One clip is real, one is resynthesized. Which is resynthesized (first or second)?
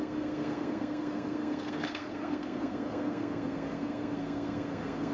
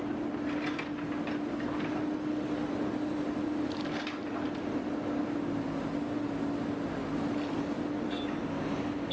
first